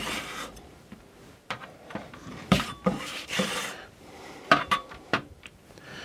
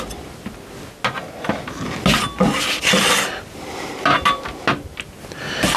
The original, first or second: second